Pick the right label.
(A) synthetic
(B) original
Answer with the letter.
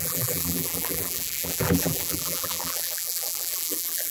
A